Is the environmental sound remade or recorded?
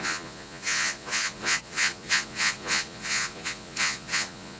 remade